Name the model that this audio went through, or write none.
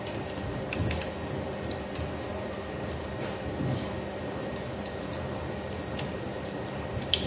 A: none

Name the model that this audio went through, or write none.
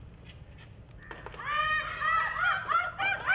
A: none